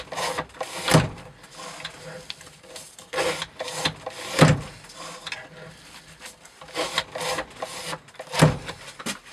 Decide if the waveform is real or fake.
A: real